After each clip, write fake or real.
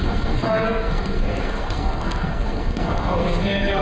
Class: fake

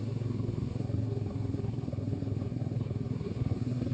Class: fake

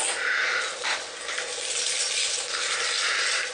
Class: real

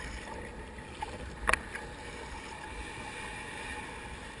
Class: real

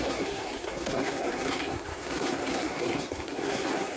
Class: fake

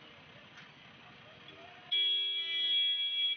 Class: real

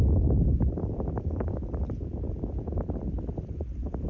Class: real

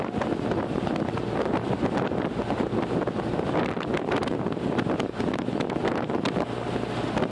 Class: real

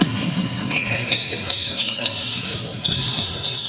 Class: fake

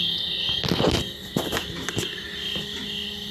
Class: real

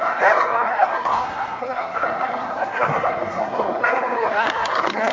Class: fake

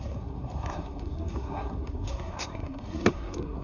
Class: fake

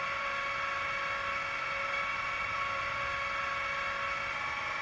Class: real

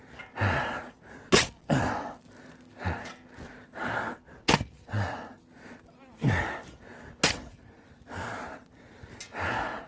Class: real